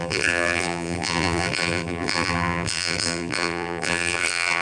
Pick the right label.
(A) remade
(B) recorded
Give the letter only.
A